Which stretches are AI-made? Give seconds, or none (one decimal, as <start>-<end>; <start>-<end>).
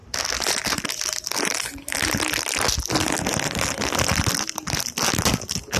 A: none